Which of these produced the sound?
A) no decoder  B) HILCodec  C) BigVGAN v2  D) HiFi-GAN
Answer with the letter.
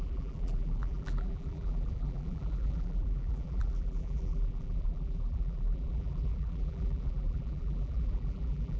C